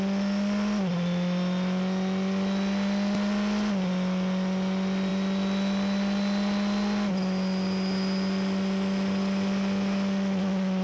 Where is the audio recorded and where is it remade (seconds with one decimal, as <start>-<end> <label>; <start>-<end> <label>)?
0.0-10.8 recorded